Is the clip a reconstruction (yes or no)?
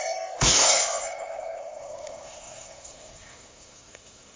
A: yes